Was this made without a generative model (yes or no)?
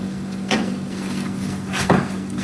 no